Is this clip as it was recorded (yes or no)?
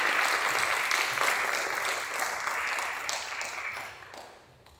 yes